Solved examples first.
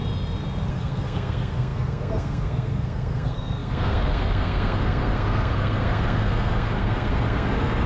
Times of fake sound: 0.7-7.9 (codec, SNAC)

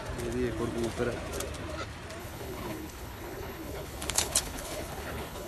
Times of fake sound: 2.2-5.5 (codec, HILCodec)

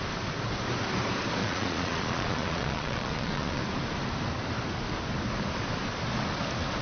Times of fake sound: 1.4-3.6 (vocoder, Vocos)